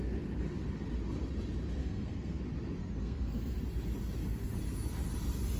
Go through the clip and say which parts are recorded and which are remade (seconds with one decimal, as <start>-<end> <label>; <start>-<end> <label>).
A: 0.0-1.8 recorded; 1.8-2.4 remade; 2.4-2.8 recorded; 2.8-3.6 remade; 3.6-5.6 recorded